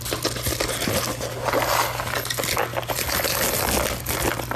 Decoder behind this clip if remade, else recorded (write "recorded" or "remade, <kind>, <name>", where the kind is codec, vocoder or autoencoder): recorded